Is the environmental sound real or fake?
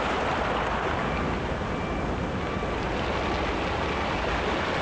real